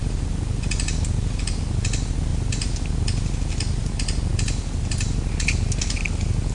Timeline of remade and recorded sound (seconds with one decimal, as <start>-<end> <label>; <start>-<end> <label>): 0.0-6.5 recorded